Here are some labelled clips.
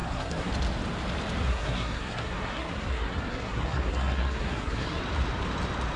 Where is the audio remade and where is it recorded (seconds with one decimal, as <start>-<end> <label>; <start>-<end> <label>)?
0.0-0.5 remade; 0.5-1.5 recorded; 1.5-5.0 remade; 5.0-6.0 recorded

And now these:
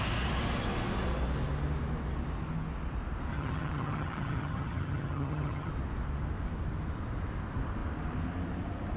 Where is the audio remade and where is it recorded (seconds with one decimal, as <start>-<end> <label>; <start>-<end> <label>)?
0.0-3.3 recorded; 3.3-5.7 remade; 5.7-9.0 recorded

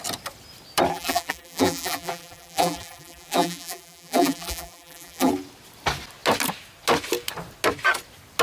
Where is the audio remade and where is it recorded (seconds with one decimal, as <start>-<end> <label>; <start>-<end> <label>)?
0.0-0.9 recorded; 0.9-5.3 remade; 5.3-8.4 recorded

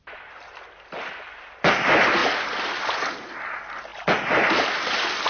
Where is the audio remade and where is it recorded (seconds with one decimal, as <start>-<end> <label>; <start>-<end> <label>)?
0.0-5.3 recorded